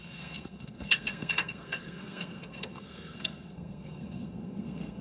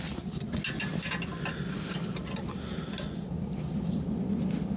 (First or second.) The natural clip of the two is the second